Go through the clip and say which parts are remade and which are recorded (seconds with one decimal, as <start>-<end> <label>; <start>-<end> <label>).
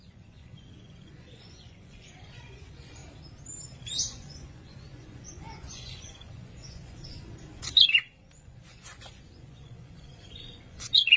0.0-3.0 remade; 3.0-3.8 recorded; 3.8-11.2 remade